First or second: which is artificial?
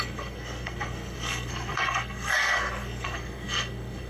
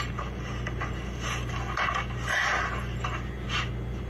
first